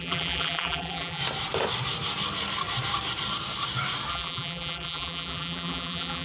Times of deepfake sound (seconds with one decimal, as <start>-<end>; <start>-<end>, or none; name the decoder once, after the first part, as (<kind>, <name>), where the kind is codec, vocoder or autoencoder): 0.0-1.2 (vocoder, BigVGAN v2); 4.1-6.2